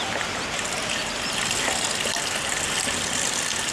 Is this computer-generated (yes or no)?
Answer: no